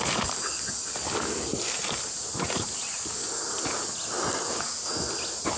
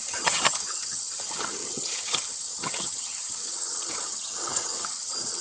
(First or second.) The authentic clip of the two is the first